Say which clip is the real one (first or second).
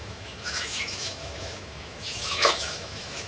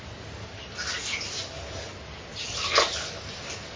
second